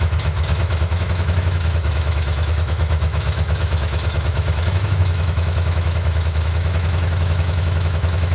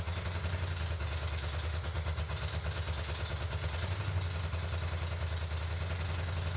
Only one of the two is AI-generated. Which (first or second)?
first